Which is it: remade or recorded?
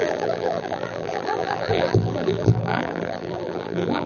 remade